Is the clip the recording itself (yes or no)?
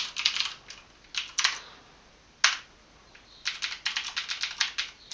yes